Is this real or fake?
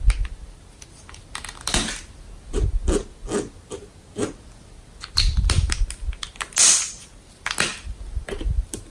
real